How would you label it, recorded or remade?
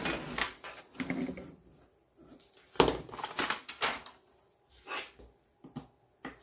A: recorded